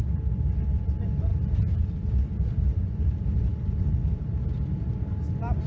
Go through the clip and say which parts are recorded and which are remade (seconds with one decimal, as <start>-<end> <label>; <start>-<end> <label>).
0.0-5.7 recorded